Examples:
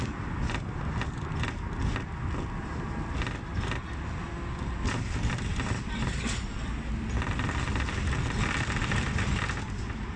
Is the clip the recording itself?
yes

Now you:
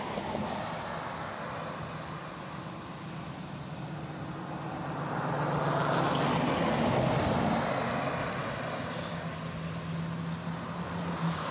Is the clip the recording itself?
yes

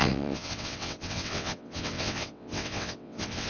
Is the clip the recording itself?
no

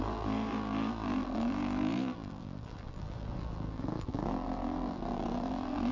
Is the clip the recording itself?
no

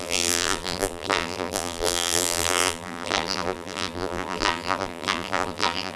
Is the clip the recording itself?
no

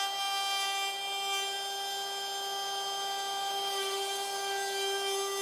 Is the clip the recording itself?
yes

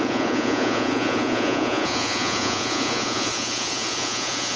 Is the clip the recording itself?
no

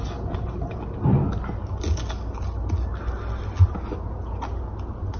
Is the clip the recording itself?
yes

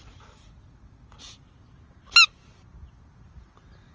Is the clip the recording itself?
yes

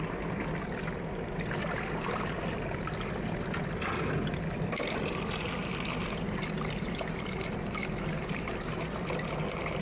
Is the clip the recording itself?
no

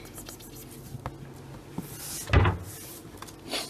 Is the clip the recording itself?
yes